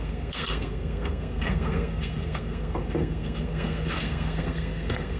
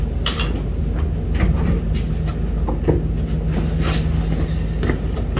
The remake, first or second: first